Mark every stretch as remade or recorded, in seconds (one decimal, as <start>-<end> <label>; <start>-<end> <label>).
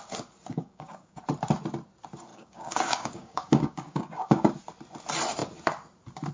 0.0-0.5 recorded; 0.5-1.2 remade; 1.2-2.3 recorded; 2.3-4.5 remade; 4.5-6.3 recorded